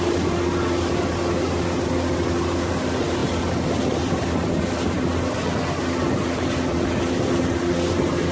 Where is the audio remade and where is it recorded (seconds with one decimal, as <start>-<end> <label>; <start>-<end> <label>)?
0.0-8.3 recorded